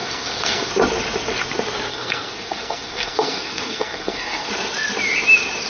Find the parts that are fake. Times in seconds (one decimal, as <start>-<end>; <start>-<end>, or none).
0.0-0.7; 1.9-4.5

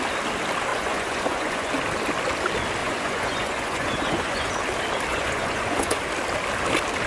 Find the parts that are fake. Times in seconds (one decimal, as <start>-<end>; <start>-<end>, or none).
0.7-1.7; 2.8-4.5; 5.1-6.0

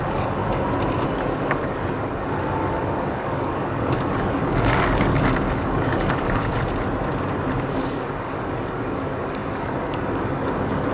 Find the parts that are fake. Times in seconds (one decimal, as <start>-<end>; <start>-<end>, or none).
0.0-0.4; 1.3-6.4; 7.7-10.9

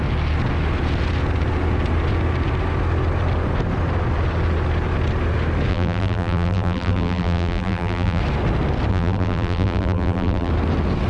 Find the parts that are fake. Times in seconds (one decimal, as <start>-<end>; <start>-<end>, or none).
5.7-8.2; 8.9-10.5

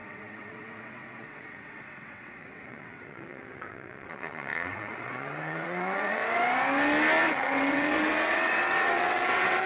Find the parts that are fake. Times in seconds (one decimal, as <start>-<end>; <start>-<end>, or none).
0.0-6.2; 7.3-9.7

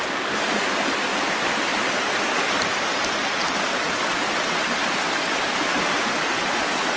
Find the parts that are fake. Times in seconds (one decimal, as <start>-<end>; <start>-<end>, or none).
0.0-1.1; 4.3-7.0

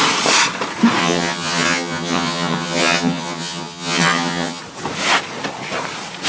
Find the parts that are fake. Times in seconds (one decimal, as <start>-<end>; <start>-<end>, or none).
1.0-4.6